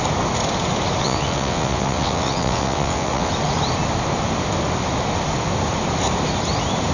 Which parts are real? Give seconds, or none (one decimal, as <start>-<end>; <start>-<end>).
0.0-1.0; 3.3-6.9